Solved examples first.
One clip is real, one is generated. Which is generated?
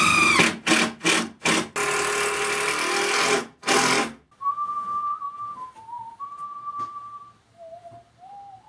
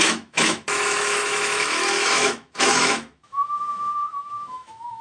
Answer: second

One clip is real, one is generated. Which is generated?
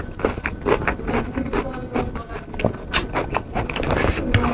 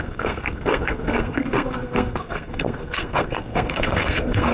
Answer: second